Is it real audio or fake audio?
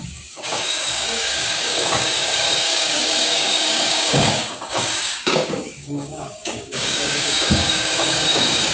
fake